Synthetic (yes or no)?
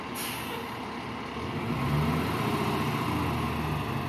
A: no